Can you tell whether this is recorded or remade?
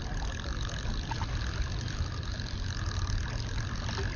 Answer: recorded